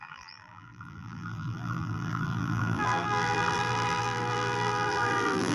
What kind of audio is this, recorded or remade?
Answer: remade